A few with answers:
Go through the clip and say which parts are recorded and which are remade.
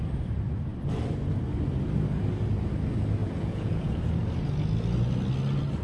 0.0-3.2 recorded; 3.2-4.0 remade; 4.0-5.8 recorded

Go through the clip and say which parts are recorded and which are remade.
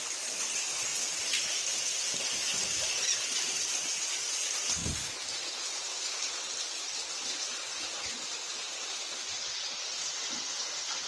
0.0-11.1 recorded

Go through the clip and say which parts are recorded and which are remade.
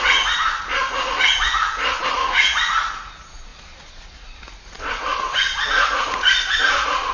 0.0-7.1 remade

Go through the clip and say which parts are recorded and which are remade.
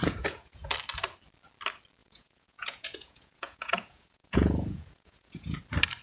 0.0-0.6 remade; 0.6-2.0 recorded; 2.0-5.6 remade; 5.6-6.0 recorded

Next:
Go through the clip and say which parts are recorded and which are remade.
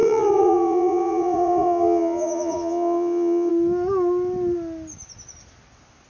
0.0-3.5 remade; 3.5-6.1 recorded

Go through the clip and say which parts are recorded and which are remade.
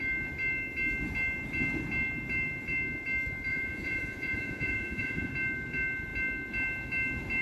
0.0-3.5 recorded; 3.5-5.3 remade; 5.3-7.4 recorded